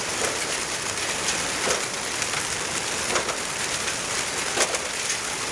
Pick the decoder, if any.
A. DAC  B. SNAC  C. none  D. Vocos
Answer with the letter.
C